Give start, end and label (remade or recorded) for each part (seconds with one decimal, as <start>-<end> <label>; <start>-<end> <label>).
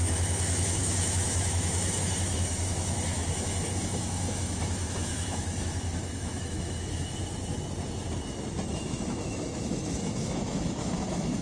0.0-7.2 remade; 7.2-8.7 recorded; 8.7-11.4 remade